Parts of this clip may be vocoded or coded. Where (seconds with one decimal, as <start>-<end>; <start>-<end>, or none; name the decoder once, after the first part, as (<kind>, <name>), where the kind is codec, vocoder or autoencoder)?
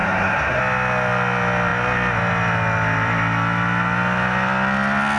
0.0-0.6 (codec, SNAC)